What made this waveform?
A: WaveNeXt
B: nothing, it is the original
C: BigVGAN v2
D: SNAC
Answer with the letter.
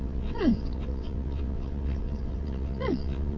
A